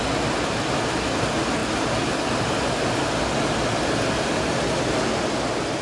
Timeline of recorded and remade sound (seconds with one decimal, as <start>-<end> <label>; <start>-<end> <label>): 0.0-5.8 recorded